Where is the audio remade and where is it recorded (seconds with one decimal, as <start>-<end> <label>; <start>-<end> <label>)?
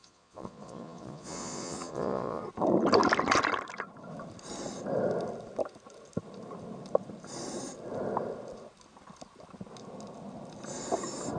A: 0.0-2.4 remade; 2.4-11.4 recorded